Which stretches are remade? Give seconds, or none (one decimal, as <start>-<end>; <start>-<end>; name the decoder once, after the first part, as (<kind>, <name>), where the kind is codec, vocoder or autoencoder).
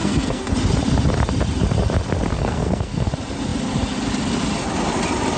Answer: 0.0-0.5 (codec, SNAC); 2.3-3.1